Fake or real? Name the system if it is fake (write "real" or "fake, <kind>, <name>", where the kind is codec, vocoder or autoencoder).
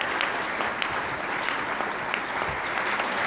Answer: real